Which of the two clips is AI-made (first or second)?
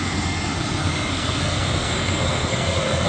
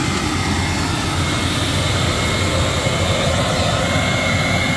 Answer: first